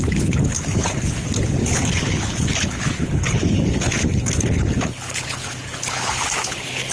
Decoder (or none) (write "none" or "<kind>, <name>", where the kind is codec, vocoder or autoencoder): codec, HILCodec